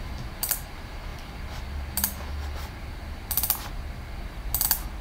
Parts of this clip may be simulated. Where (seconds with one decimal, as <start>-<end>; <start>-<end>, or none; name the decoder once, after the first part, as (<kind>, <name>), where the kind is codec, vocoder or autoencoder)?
none